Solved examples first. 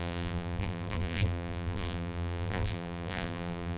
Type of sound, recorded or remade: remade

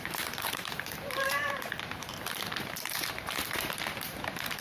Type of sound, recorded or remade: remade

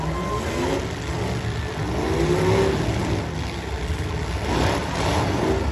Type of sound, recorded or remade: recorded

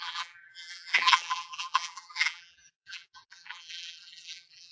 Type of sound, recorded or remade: remade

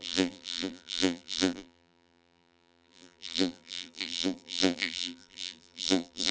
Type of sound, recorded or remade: remade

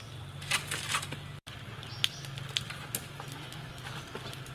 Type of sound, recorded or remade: recorded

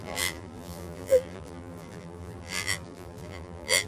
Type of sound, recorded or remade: remade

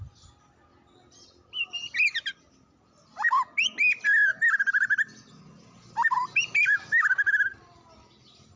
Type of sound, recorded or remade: recorded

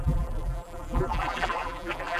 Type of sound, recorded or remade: remade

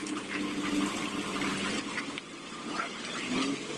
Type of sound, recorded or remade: recorded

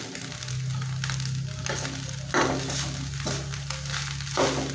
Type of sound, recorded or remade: recorded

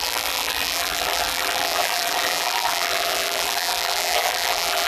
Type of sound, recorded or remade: remade